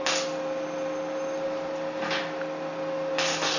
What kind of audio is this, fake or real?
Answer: real